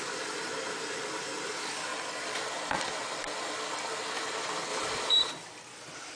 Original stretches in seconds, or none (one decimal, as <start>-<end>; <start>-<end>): 0.0-1.9; 3.5-4.7; 5.2-6.2